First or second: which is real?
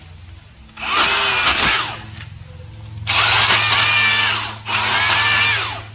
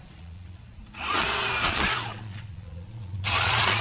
first